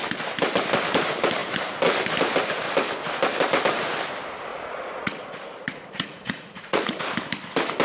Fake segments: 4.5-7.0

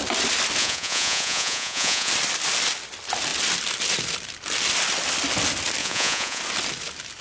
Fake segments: 0.6-2.1; 5.8-6.4